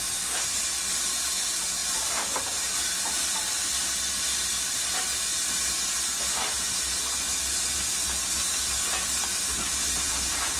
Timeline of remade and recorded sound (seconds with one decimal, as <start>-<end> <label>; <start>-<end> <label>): 0.0-1.8 recorded; 1.8-3.7 remade; 3.7-10.6 recorded